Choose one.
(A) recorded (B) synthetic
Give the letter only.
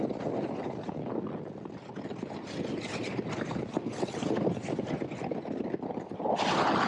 A